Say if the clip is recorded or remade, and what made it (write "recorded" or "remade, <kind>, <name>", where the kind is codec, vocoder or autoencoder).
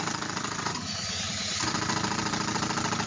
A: remade, vocoder, BigVGAN v2